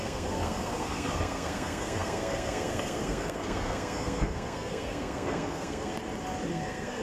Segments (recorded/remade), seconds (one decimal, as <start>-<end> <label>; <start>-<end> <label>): 0.0-5.9 remade; 5.9-6.5 recorded; 6.5-7.0 remade